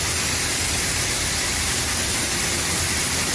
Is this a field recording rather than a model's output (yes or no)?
yes